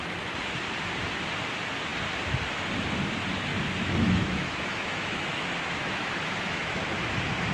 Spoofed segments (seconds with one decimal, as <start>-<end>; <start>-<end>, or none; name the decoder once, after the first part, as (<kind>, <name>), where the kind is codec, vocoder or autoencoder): 3.5-6.9 (autoencoder, DAC-VAE)